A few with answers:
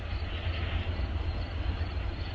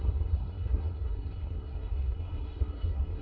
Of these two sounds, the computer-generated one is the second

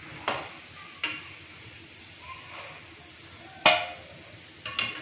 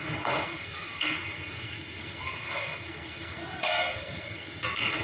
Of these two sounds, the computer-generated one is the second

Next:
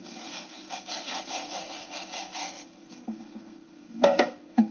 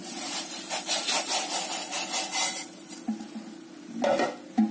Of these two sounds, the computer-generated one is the first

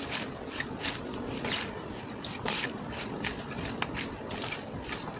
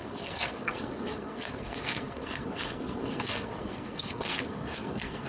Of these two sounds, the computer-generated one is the second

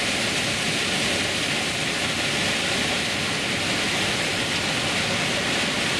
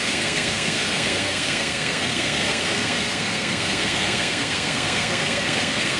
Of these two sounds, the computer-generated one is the second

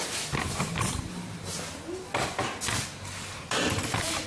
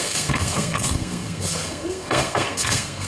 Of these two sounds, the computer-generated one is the second